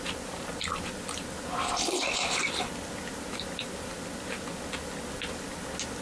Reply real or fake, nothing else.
real